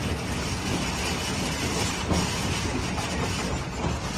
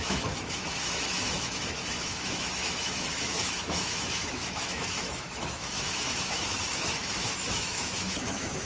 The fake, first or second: second